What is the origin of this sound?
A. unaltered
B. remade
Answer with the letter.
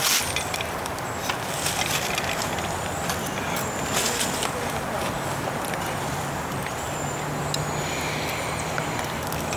A